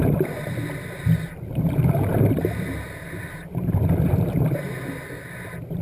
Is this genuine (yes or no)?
yes